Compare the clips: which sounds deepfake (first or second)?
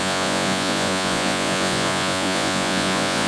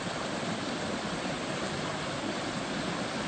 first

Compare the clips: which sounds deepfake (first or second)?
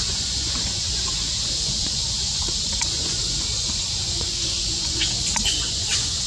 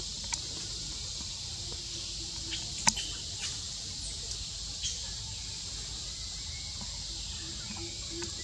first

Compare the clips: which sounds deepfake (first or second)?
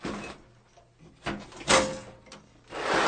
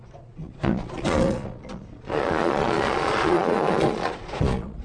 second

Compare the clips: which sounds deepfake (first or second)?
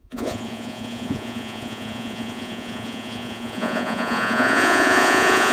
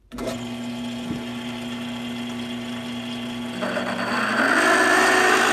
first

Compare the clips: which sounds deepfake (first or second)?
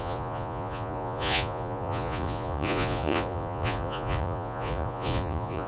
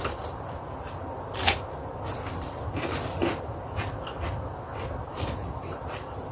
first